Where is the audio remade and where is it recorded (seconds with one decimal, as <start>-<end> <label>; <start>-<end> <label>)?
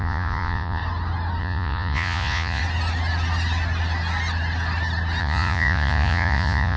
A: 0.0-0.8 remade; 0.8-1.4 recorded; 1.4-2.6 remade; 2.6-5.2 recorded; 5.2-6.8 remade